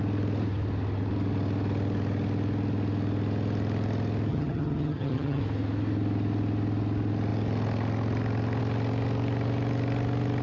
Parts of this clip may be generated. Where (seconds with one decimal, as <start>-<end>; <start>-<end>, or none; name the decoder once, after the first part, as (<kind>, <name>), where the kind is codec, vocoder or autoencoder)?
4.3-5.4 (vocoder, HiFi-GAN)